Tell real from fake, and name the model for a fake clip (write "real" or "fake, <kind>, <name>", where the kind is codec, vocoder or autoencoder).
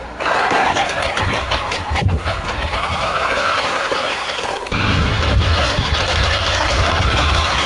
fake, codec, SNAC